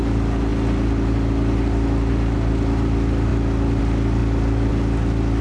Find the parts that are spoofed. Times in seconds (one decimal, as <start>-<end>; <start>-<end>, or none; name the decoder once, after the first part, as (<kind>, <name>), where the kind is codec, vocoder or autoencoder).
none